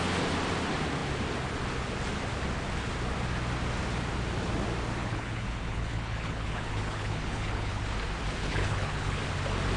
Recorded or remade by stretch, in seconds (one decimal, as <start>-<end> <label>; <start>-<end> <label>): 0.0-5.0 recorded; 5.0-7.8 remade; 7.8-8.4 recorded; 8.4-9.2 remade; 9.2-9.8 recorded